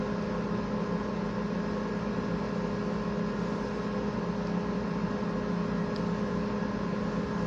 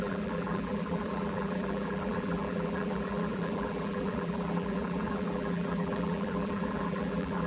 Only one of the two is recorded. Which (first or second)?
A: first